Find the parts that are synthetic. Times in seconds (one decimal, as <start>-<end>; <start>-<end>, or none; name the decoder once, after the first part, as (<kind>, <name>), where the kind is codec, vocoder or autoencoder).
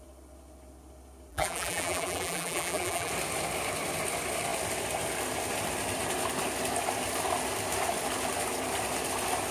1.3-3.1 (vocoder, BigVGAN v2)